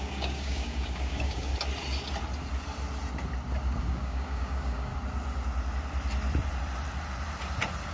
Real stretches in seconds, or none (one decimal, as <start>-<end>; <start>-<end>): 1.5-3.8; 4.9-7.9